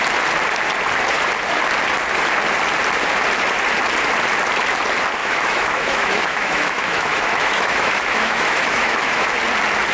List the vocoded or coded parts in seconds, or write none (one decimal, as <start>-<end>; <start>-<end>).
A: 5.2-9.3

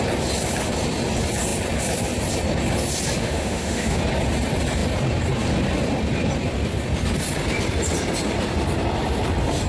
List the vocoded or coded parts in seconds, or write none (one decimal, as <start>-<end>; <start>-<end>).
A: 3.2-4.0

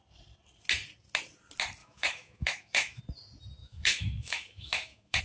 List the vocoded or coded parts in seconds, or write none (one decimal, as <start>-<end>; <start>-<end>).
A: 1.8-3.0; 3.6-5.2

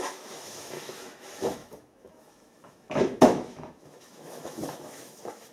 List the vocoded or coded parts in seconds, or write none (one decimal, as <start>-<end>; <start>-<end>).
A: 0.0-5.5

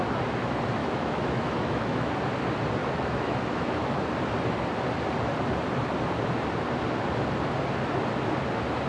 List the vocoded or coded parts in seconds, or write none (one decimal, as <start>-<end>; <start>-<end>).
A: 0.8-2.1; 2.8-4.0

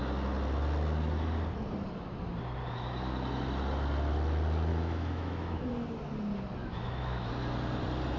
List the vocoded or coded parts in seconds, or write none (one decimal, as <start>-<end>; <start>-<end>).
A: 4.7-5.7; 6.6-7.3

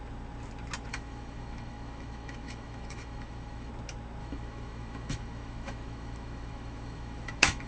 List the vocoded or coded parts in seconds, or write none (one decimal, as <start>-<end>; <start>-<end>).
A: 0.9-3.7; 4.2-7.7

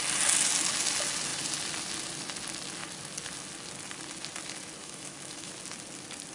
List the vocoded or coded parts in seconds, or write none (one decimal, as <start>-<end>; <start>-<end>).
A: 4.8-5.5